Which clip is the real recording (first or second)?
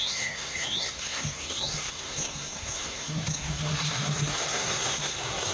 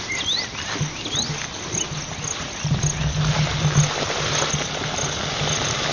second